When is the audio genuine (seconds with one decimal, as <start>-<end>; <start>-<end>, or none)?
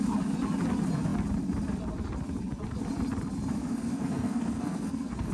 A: 0.0-3.6